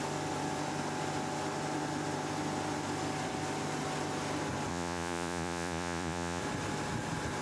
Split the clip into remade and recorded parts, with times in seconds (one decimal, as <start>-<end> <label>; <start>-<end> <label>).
0.0-4.7 recorded; 4.7-6.4 remade; 6.4-7.4 recorded